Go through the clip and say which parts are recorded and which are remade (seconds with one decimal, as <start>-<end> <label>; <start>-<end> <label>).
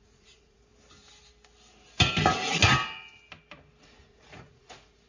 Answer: 0.0-0.7 remade; 0.7-3.8 recorded; 3.8-5.1 remade